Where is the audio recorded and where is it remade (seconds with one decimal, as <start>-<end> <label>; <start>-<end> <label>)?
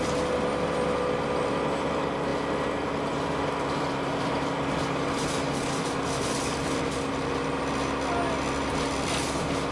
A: 0.0-9.7 recorded